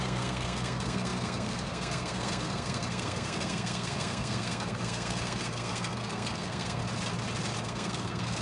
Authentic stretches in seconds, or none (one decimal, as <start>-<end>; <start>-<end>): 6.8-7.6